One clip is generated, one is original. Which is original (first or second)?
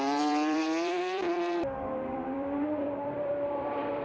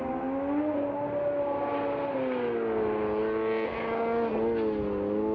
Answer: second